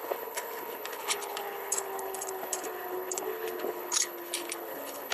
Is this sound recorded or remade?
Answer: remade